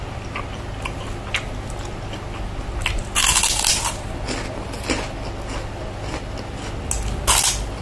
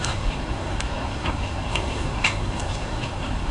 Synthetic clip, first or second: second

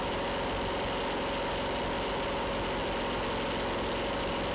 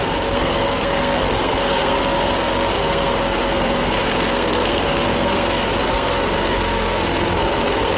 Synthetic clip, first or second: second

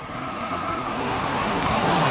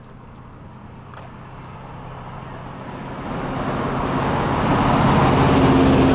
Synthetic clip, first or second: first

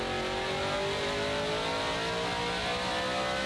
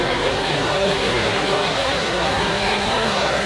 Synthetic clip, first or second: second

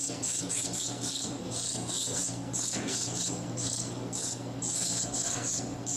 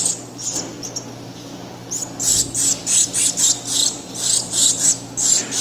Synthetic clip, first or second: first